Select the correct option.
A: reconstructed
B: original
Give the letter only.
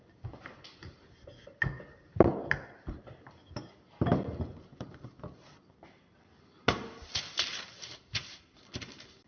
B